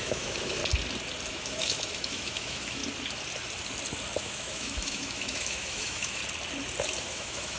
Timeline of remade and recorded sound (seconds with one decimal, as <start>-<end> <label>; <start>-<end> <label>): 0.0-0.6 remade; 0.6-1.3 recorded; 1.3-2.8 remade; 2.8-4.2 recorded; 4.2-6.2 remade; 6.2-7.0 recorded; 7.0-7.6 remade